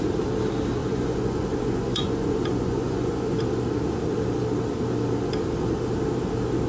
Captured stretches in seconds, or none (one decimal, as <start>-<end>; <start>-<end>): 0.0-0.8; 3.4-6.7